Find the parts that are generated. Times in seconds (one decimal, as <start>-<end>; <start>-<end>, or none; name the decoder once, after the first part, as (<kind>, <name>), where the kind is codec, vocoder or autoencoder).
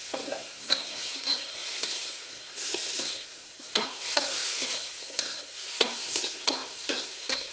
0.0-7.5 (codec, SNAC)